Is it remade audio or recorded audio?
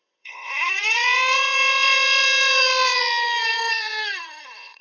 remade